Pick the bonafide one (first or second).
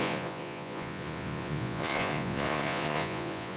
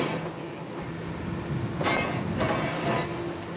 second